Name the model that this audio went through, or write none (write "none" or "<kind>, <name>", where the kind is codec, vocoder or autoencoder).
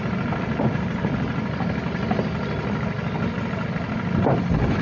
none